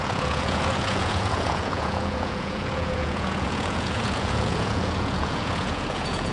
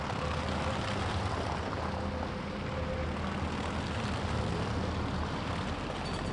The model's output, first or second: first